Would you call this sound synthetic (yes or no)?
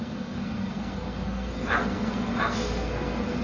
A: yes